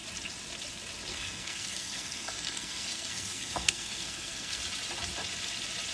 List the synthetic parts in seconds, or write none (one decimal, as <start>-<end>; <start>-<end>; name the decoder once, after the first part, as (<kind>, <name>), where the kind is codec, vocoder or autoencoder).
1.1-4.6 (codec, SNAC)

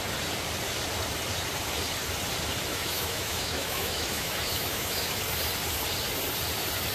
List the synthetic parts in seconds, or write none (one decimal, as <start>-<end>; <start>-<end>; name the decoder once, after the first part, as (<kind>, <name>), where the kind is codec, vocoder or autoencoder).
2.7-5.2 (autoencoder, DAC-VAE)

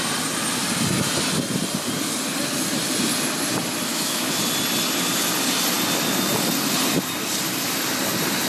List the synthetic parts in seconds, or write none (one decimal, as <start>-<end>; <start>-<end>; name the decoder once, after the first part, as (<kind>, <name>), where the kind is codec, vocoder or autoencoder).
3.9-4.4 (autoencoder, DAC-VAE)